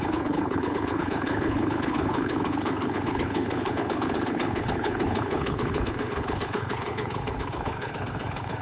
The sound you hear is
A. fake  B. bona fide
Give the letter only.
A